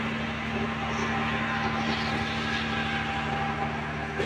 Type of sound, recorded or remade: recorded